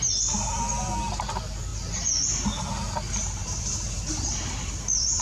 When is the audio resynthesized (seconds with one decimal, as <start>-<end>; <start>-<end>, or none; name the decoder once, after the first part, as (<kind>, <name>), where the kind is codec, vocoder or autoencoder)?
3.4-5.2 (vocoder, BigVGAN v2)